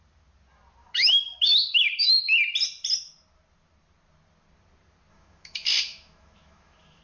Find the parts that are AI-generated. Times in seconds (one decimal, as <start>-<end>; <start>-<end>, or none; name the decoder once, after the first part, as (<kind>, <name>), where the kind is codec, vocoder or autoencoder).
0.8-2.2 (autoencoder, DAC-VAE); 5.1-7.0